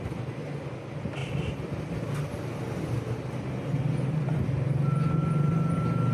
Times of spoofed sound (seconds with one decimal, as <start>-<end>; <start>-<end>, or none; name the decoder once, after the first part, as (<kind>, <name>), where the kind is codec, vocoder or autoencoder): none